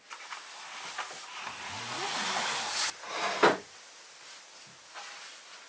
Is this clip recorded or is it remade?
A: recorded